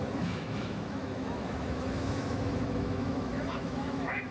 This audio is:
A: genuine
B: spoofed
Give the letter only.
B